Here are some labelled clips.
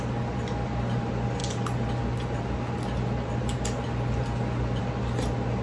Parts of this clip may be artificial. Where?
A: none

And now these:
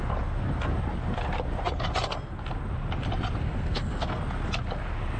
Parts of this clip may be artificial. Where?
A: 3.4-4.2 (codec, SNAC)

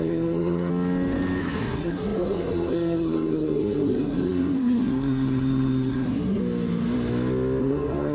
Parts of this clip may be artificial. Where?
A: 0.0-0.7 (codec, SNAC); 1.4-6.4; 7.6-8.1

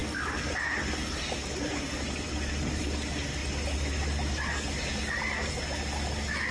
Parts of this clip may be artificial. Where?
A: none

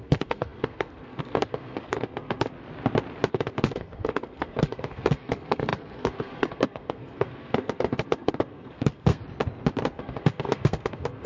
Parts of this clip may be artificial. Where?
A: 0.0-2.5 (codec, SNAC); 3.3-9.2; 9.9-11.3

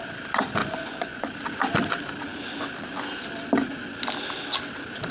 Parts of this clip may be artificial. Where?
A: 0.6-1.3 (vocoder, Vocos)

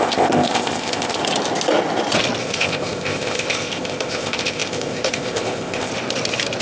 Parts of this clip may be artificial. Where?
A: 0.0-1.2 (codec, ZipCodec); 2.4-5.9